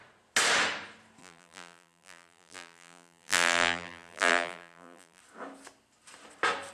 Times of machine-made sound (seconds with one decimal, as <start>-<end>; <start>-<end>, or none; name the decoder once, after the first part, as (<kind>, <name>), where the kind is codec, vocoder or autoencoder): 1.2-5.2 (vocoder, BigVGAN v2)